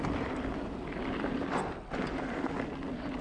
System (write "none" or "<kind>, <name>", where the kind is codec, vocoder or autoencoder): none